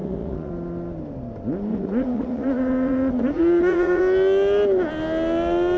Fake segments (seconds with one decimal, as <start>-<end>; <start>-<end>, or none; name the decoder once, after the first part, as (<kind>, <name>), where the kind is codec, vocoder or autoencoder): 0.0-0.5 (vocoder, Vocos); 1.7-4.0

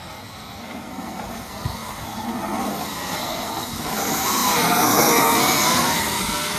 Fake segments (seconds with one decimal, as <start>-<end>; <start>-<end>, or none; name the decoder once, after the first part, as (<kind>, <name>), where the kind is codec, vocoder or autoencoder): 0.0-6.6 (codec, SNAC)

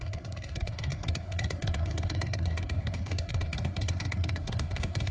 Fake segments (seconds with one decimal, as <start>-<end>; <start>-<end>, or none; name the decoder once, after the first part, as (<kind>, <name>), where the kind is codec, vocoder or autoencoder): 0.0-5.1 (codec, SNAC)

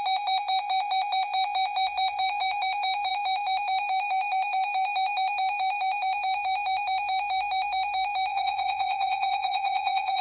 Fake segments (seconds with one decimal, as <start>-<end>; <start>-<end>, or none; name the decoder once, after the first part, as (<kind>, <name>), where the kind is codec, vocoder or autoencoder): 8.3-10.2 (vocoder, Vocos)

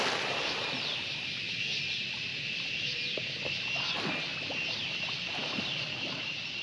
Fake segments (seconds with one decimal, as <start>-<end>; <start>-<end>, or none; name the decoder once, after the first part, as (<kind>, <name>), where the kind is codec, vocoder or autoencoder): 4.3-6.6 (vocoder, BigVGAN v2)

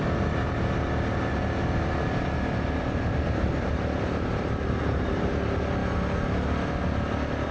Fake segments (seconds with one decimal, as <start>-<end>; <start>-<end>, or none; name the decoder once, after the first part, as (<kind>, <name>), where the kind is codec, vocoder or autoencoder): 1.3-5.3 (vocoder, BigVGAN v2)